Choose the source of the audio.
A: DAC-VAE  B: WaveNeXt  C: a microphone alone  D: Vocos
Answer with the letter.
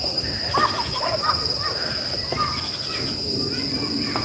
C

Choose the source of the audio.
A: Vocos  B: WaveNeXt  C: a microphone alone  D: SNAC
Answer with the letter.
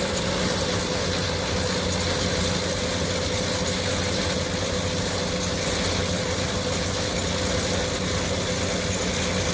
C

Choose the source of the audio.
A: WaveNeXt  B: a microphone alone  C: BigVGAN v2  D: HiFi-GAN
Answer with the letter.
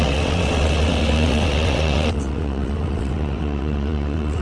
A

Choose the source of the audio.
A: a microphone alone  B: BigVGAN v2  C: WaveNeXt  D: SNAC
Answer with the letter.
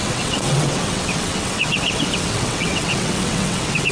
C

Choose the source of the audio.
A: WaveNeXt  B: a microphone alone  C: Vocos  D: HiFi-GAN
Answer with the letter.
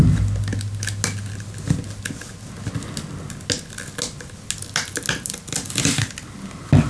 B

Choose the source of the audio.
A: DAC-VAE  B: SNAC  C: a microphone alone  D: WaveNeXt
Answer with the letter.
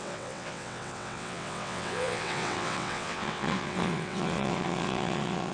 D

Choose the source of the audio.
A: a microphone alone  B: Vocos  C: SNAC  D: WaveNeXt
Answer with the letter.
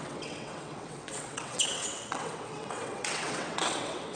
D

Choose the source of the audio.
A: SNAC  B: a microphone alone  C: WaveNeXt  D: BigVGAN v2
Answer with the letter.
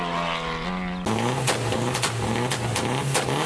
B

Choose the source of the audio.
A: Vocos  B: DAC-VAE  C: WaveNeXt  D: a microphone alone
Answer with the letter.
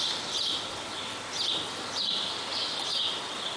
D